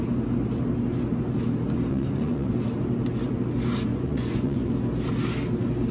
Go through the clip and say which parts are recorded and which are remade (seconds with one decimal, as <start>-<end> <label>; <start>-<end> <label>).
0.0-1.9 recorded; 1.9-2.5 remade; 2.5-3.9 recorded; 3.9-4.7 remade; 4.7-5.9 recorded